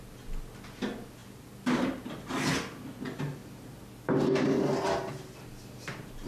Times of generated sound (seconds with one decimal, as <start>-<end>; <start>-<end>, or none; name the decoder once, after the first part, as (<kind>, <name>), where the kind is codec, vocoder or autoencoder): none